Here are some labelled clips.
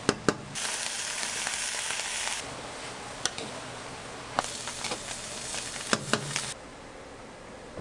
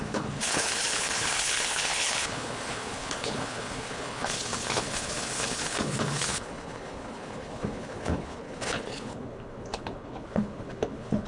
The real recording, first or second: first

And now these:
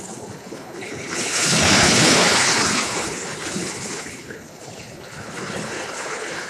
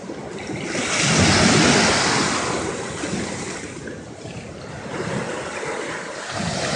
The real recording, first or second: second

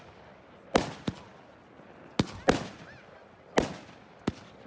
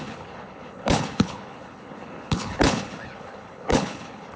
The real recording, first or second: first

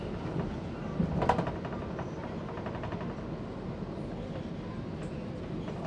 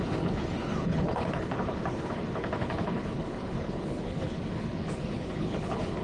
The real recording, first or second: first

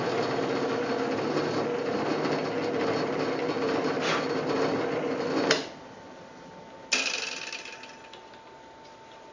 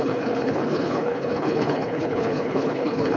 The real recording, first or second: first